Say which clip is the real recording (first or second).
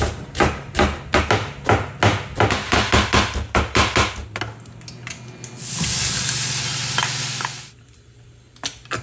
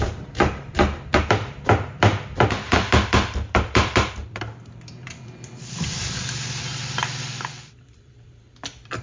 first